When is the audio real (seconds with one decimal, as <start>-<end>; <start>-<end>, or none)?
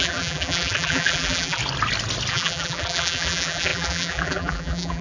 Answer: 1.6-2.3